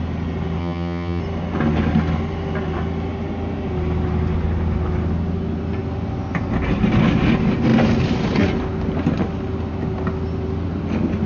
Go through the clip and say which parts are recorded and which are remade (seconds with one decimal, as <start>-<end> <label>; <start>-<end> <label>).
0.0-0.6 recorded; 0.6-1.2 remade; 1.2-11.3 recorded